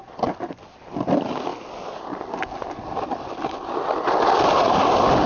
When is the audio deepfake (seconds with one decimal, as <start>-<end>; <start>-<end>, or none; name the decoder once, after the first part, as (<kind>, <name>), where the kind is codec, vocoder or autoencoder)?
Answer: none